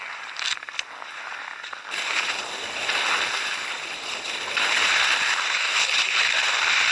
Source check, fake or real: fake